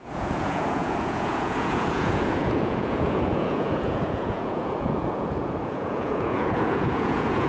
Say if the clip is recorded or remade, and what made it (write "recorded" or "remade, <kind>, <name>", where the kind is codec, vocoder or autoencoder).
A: remade, vocoder, Vocos